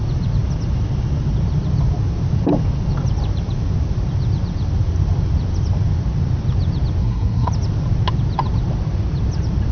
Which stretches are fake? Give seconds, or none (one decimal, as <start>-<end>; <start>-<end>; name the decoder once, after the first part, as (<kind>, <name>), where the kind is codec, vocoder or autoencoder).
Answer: 7.0-7.5 (codec, SNAC)